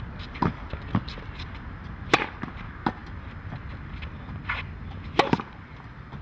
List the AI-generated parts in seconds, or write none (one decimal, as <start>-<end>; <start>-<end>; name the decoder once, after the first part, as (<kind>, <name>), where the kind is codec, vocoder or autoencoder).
none